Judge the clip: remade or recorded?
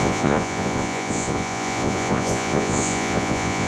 remade